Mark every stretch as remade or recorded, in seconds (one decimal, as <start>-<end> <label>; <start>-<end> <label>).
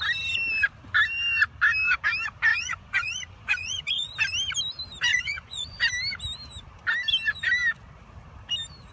0.0-2.5 recorded; 2.5-4.1 remade; 4.1-5.1 recorded; 5.1-5.8 remade; 5.8-8.9 recorded